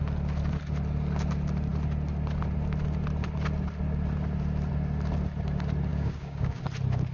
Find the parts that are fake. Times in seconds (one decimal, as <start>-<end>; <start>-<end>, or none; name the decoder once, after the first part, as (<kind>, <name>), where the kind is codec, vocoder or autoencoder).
5.9-6.6 (codec, DAC)